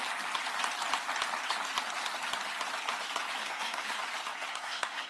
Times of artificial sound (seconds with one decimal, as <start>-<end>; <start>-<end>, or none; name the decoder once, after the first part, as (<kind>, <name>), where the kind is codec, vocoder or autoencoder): 3.4-4.0 (codec, SNAC); 4.5-5.1